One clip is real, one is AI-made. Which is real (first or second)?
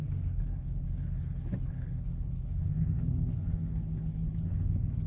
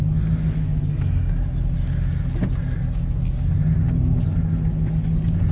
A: second